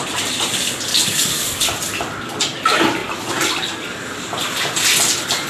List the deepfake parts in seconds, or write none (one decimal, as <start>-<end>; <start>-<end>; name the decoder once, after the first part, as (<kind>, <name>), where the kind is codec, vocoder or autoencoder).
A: 0.9-1.6 (codec, DAC)